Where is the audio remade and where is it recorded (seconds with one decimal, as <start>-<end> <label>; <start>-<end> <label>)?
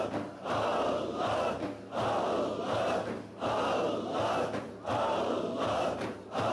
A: 0.0-0.7 remade; 0.7-4.6 recorded; 4.6-6.5 remade